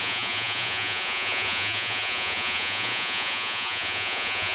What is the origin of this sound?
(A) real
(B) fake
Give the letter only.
B